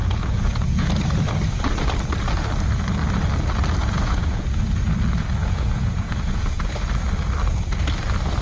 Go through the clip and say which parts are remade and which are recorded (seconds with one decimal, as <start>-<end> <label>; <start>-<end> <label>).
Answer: 0.0-0.9 remade; 0.9-3.8 recorded; 3.8-4.6 remade; 4.6-5.4 recorded; 5.4-6.7 remade; 6.7-8.4 recorded